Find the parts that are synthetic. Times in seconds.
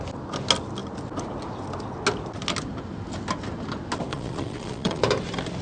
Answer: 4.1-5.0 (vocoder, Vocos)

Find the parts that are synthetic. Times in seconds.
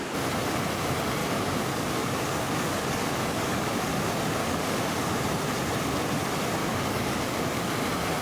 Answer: 1.2-4.0 (codec, DAC); 4.4-5.1; 6.6-7.7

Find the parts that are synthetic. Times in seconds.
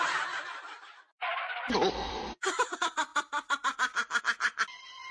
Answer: 0.0-3.1 (vocoder, BigVGAN v2); 4.2-5.1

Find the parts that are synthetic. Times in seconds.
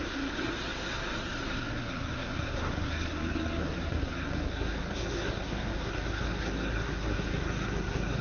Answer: 0.0-8.2 (codec, SNAC)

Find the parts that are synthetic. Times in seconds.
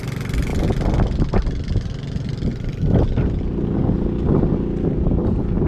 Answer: none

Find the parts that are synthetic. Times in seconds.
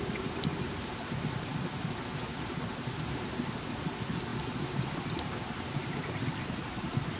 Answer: none